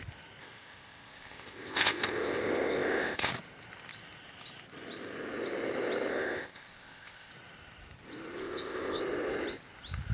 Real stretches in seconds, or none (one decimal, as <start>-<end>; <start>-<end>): 0.0-0.4; 3.3-6.1; 7.3-8.4; 9.0-10.1